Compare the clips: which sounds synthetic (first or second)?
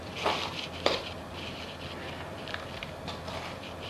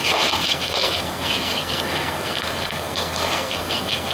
second